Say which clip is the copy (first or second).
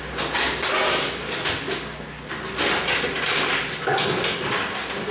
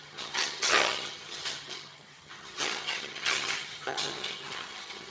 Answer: second